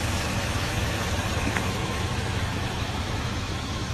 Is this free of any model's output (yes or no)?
no